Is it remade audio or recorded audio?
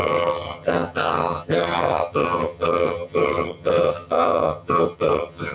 remade